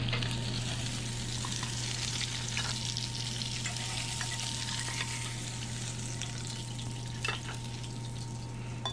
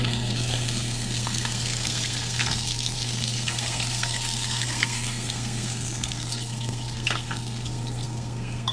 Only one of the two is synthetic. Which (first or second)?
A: second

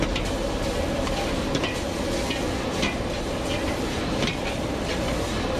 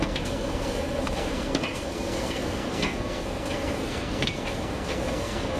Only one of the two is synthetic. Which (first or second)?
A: second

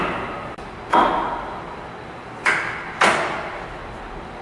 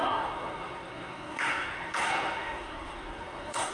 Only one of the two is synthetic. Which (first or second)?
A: second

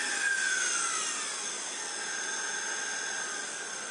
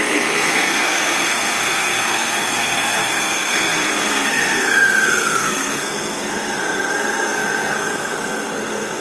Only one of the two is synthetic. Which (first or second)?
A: second